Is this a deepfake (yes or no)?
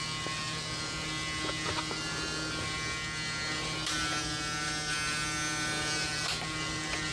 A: no